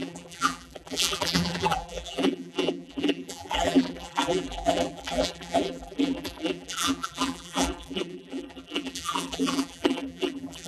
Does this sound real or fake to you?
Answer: fake